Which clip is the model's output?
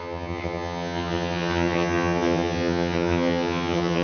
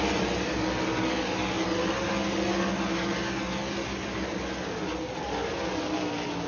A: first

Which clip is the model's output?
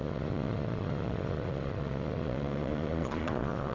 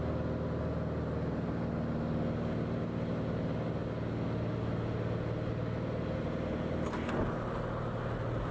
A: first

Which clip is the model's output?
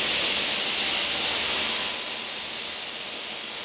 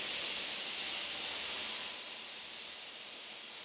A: second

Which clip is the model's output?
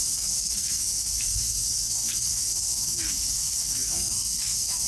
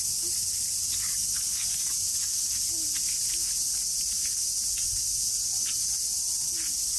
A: first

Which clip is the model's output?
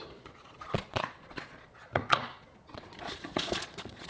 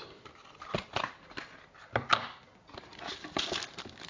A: first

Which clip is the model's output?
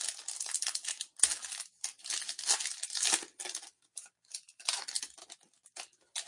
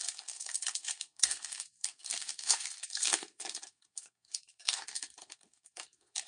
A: second